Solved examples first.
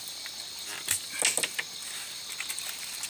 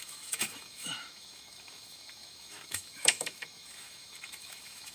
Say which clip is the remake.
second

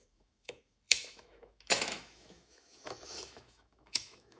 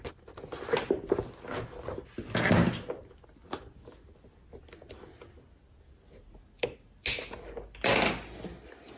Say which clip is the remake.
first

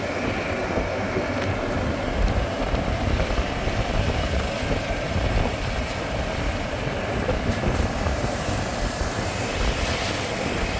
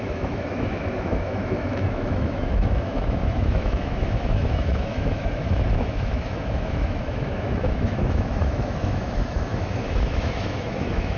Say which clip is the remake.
second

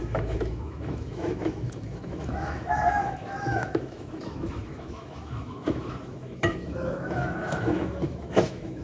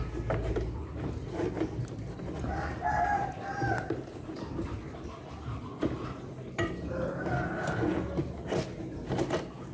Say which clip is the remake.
first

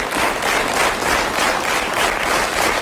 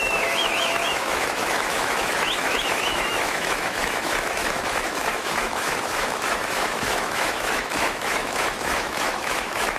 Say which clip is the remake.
second